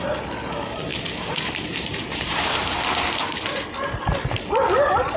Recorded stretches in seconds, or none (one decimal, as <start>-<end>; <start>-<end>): 0.0-0.9; 4.0-5.2